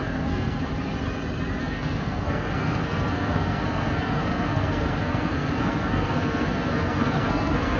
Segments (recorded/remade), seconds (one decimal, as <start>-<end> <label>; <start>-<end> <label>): 0.0-0.7 remade; 0.7-1.6 recorded; 1.6-7.8 remade